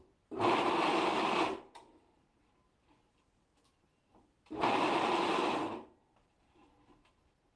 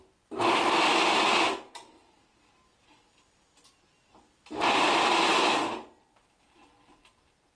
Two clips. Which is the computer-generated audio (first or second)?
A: first